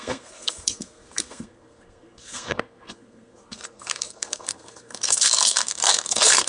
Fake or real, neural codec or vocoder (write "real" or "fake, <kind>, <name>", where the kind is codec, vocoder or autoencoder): fake, codec, SNAC